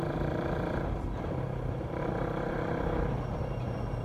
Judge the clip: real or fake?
fake